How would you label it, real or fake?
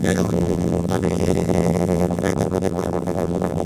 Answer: fake